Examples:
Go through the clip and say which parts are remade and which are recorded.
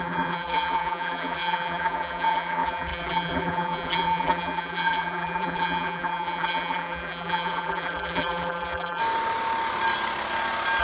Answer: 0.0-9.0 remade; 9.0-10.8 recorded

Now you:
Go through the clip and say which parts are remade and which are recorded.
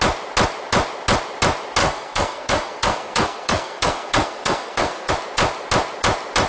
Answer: 0.0-1.8 recorded; 1.8-5.1 remade; 5.1-6.5 recorded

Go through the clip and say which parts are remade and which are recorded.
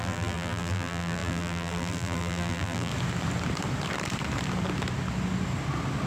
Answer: 0.0-2.9 remade; 2.9-6.1 recorded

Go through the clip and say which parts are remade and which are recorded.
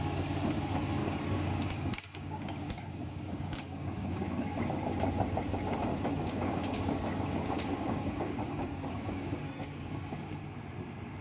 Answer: 0.0-1.0 recorded; 1.0-4.6 remade; 4.6-5.9 recorded; 5.9-10.0 remade; 10.0-11.2 recorded